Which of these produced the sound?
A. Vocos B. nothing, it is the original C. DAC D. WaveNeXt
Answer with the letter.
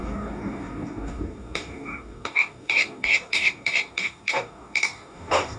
C